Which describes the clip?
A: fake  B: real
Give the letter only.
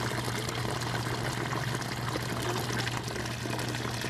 B